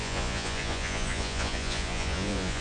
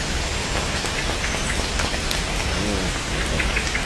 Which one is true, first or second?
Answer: second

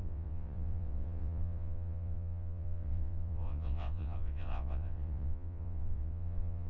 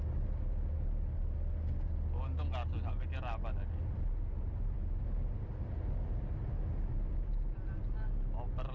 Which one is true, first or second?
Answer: second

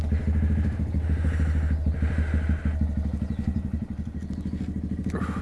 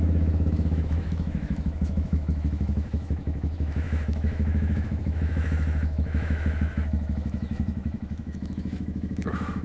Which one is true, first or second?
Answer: first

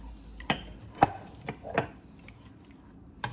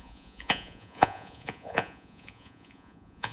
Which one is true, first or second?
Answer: first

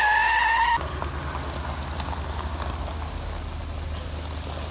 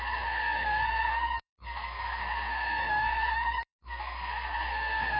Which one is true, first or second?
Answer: first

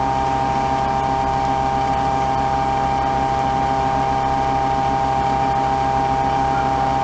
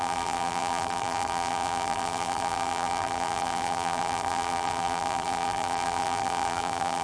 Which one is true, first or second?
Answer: first